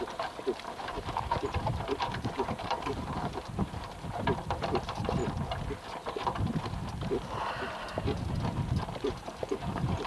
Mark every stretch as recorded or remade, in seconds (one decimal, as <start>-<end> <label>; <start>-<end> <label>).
0.0-5.2 remade; 5.2-9.1 recorded; 9.1-10.1 remade